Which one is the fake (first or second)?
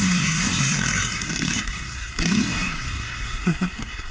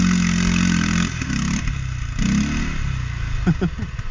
first